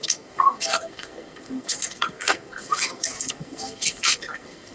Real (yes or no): no